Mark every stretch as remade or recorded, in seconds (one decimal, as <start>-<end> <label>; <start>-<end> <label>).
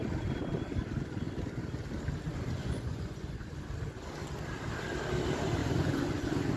0.0-2.6 recorded; 2.6-3.5 remade; 3.5-5.6 recorded; 5.6-6.6 remade